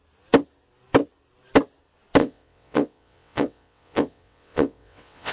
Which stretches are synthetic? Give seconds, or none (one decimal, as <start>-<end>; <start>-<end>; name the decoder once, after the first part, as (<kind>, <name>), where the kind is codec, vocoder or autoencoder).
2.2-5.3 (vocoder, WaveNeXt)